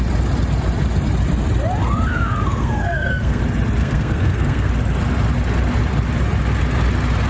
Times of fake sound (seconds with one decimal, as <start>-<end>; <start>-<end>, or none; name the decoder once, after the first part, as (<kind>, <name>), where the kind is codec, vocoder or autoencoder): 1.8-3.4 (codec, SNAC); 3.8-4.7